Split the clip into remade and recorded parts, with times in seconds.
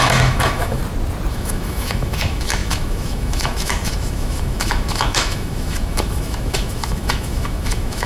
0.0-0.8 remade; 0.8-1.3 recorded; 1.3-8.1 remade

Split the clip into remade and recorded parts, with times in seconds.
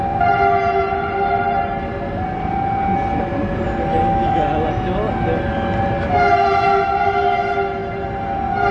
0.0-4.0 recorded; 4.0-4.7 remade; 4.7-8.7 recorded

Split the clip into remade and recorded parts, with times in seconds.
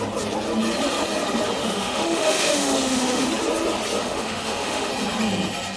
0.0-1.6 recorded; 1.6-3.3 remade; 3.3-4.0 recorded; 4.0-4.9 remade; 4.9-5.8 recorded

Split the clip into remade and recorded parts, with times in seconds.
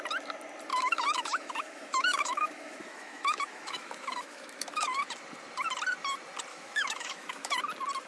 0.0-0.7 recorded; 0.7-5.0 remade; 5.0-6.5 recorded; 6.5-7.6 remade; 7.6-8.1 recorded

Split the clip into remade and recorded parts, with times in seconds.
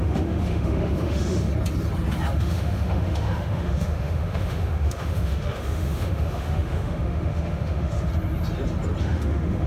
0.0-1.5 remade; 1.5-2.4 recorded; 2.4-8.1 remade; 8.1-9.0 recorded; 9.0-9.7 remade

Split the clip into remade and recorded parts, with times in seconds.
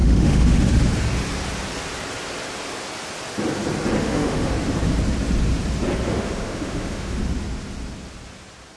0.0-0.8 remade; 0.8-4.0 recorded; 4.0-4.5 remade; 4.5-6.1 recorded; 6.1-7.2 remade; 7.2-8.8 recorded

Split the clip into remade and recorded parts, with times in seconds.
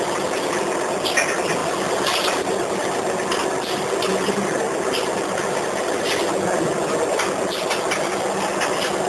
0.0-9.1 recorded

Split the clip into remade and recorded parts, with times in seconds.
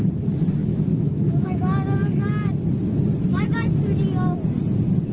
0.0-0.6 recorded; 0.6-1.6 remade; 1.6-5.1 recorded